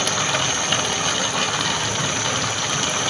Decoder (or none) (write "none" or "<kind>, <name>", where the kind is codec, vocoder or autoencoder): none